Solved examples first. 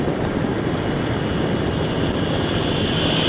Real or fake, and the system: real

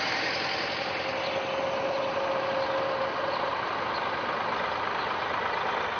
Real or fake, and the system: real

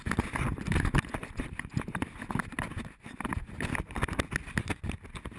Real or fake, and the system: real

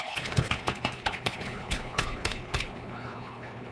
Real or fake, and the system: fake, codec, HILCodec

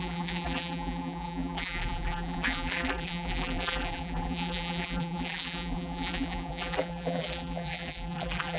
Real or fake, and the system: fake, vocoder, BigVGAN v2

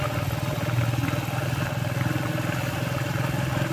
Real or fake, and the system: real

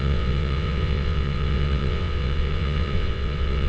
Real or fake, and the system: fake, vocoder, WaveNeXt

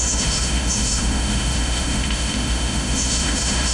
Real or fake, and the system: fake, autoencoder, DAC-VAE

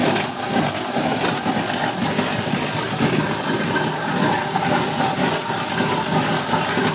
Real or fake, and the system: real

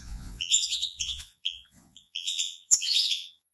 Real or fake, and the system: fake, vocoder, Vocos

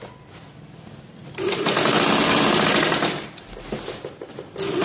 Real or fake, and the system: real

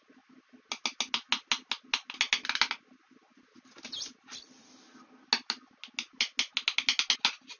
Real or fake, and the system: real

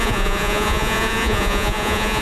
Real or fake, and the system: fake, vocoder, Vocos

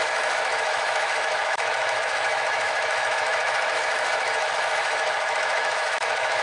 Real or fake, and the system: fake, autoencoder, DAC-VAE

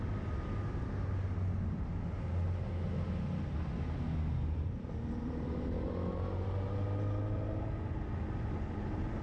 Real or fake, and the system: real